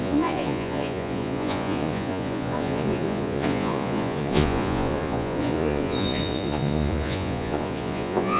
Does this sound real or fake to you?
fake